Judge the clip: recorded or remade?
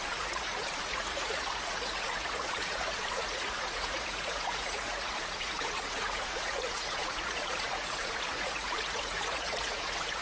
remade